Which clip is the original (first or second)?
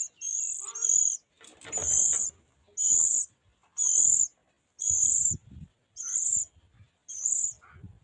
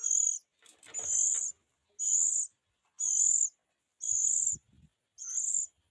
second